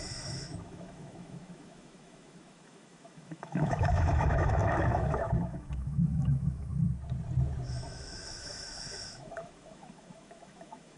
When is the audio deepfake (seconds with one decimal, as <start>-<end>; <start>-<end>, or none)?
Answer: 0.0-6.7; 7.7-11.0

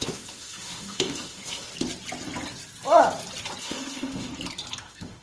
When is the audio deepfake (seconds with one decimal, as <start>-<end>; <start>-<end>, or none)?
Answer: 0.0-1.7; 3.6-4.3; 4.8-5.2

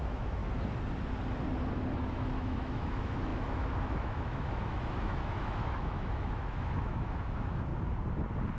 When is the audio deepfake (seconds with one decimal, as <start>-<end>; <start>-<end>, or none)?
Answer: 0.0-0.4; 1.9-7.7